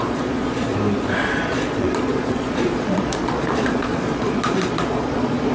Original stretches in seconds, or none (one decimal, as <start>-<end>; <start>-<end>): 0.7-1.3